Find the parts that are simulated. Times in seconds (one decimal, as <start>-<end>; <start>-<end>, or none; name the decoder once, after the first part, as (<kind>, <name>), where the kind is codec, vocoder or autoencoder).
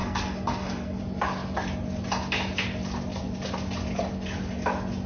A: 0.0-1.0 (codec, SNAC)